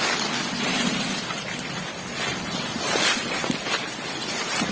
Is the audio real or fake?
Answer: fake